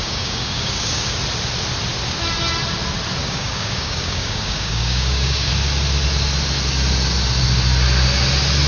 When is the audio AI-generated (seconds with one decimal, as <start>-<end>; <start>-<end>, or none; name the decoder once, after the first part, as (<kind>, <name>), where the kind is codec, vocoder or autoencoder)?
0.0-1.2 (codec, DAC); 3.2-5.5